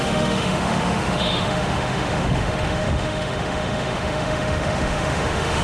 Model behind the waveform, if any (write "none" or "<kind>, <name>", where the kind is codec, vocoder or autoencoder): autoencoder, DAC-VAE